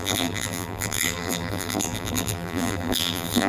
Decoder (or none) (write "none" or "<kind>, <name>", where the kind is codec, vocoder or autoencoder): vocoder, BigVGAN v2